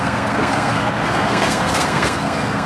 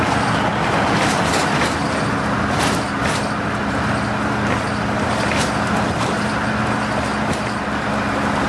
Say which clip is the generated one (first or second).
first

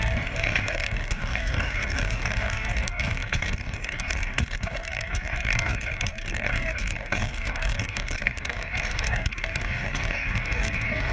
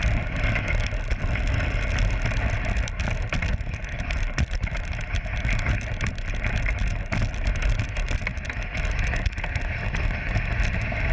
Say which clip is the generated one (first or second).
first